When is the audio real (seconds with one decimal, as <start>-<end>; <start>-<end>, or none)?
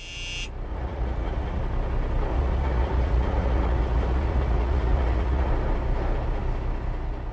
0.0-0.7; 1.6-2.3; 5.5-7.3